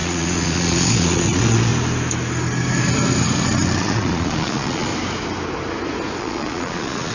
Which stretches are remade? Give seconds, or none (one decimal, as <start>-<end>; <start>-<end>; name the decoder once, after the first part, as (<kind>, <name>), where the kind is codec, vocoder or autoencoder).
0.0-1.7 (vocoder, Vocos); 3.8-4.9; 6.2-7.1

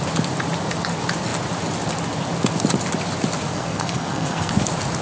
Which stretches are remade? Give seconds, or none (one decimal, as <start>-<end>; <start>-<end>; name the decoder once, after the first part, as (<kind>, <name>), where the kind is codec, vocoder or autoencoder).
3.5-4.5 (codec, SNAC)

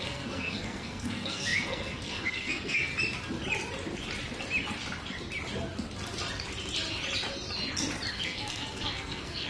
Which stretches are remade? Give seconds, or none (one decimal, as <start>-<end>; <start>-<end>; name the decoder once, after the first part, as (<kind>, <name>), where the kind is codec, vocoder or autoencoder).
0.0-2.9 (codec, SNAC); 8.1-9.5

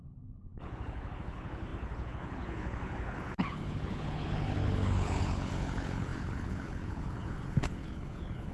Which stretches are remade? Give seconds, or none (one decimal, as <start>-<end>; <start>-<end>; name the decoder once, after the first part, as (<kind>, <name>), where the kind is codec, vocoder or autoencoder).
0.0-8.5 (codec, HILCodec)

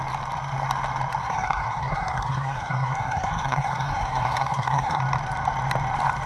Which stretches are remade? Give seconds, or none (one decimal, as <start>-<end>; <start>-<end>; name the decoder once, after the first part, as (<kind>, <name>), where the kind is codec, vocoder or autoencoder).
1.2-5.0 (codec, SNAC)

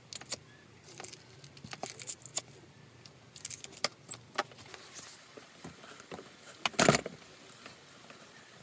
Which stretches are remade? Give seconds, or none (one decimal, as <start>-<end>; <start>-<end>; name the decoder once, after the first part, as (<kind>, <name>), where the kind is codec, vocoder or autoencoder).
none

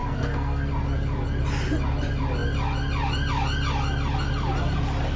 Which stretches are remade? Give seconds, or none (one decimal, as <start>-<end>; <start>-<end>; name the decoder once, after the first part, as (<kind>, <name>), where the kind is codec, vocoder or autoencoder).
0.0-0.7 (codec, SNAC)